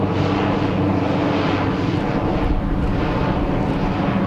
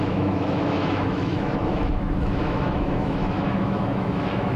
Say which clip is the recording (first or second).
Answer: first